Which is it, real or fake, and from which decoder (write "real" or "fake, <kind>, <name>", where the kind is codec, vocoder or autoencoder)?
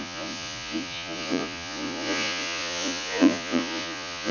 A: fake, vocoder, Vocos